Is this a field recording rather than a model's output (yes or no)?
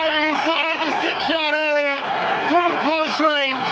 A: no